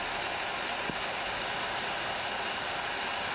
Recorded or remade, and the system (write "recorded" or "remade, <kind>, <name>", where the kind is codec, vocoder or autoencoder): recorded